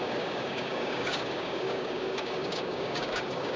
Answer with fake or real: fake